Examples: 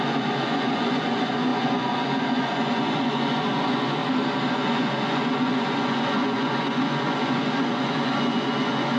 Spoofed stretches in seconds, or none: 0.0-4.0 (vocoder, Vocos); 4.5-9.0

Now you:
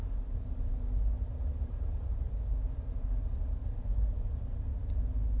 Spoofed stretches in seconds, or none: 1.3-2.3 (vocoder, BigVGAN v2); 3.6-4.3

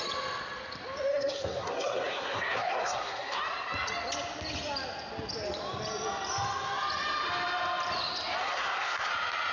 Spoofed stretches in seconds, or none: 1.1-3.4 (codec, SNAC); 8.4-9.1

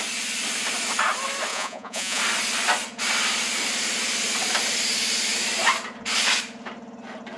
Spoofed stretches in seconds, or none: 1.5-2.2 (vocoder, Vocos)

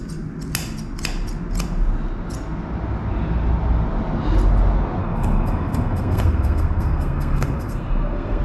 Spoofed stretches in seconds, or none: 5.0-8.4 (codec, SNAC)